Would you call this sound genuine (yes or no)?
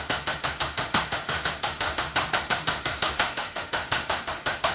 no